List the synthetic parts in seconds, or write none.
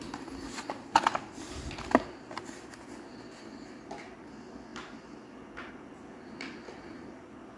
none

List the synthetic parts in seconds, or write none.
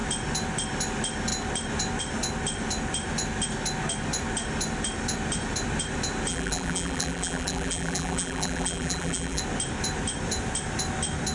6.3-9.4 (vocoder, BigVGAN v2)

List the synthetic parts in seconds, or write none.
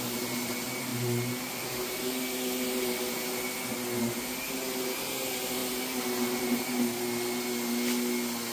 none